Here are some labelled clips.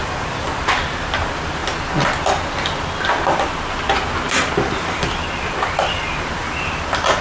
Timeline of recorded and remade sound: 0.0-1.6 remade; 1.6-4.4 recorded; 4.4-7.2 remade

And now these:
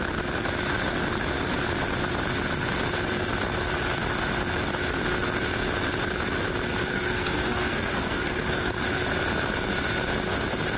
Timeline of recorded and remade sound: 0.0-6.9 recorded; 6.9-8.7 remade; 8.7-10.8 recorded

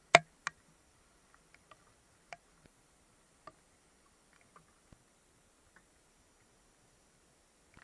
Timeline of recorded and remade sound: 0.0-7.8 recorded

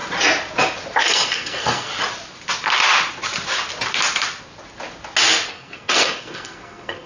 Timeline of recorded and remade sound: 0.0-1.0 recorded; 1.0-1.9 remade; 1.9-5.5 recorded; 5.5-7.1 remade

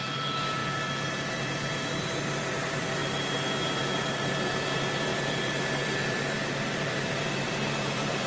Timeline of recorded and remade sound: 0.0-0.6 remade; 0.6-1.3 recorded; 1.3-3.0 remade; 3.0-3.8 recorded; 3.8-8.3 remade

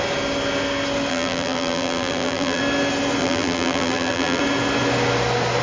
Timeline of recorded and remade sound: 0.0-1.1 recorded; 1.1-2.6 remade; 2.6-3.2 recorded; 3.2-4.4 remade; 4.4-5.6 recorded

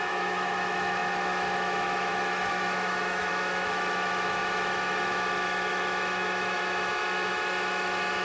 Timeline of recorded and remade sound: 0.0-8.2 remade